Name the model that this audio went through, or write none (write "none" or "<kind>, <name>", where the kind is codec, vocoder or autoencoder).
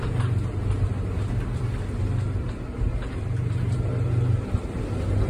none